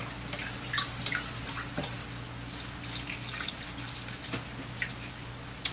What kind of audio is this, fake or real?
real